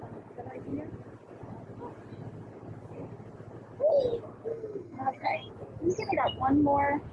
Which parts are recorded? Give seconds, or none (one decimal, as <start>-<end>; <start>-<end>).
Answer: 0.0-4.5; 5.5-7.1